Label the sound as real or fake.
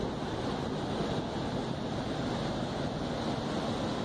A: real